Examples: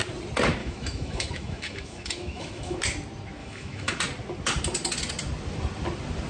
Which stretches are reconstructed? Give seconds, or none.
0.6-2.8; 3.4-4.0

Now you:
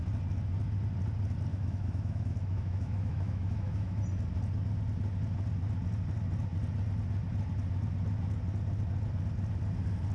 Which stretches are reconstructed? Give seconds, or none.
1.5-4.0

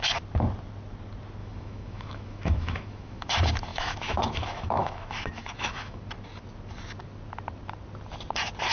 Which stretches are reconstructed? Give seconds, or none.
1.4-3.3; 3.7-6.0

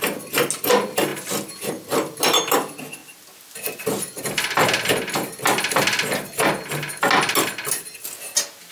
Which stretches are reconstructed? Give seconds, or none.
none

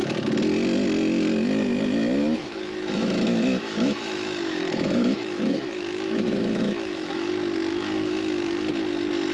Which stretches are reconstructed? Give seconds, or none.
2.4-7.3; 7.7-8.5

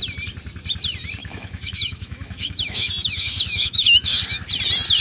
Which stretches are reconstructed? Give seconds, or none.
1.2-4.2

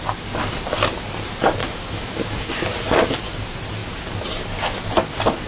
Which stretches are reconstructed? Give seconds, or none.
1.6-2.5

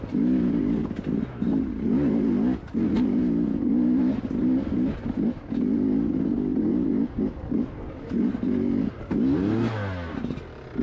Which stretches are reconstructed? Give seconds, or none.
none